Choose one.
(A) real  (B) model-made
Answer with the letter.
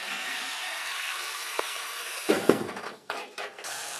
B